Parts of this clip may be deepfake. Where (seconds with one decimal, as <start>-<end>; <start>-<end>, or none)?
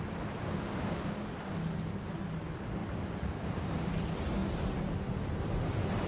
2.8-4.0